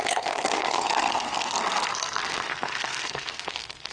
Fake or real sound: fake